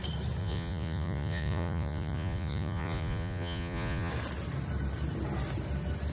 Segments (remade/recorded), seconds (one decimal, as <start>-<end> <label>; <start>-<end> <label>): 0.0-0.4 recorded; 0.4-4.1 remade; 4.1-6.1 recorded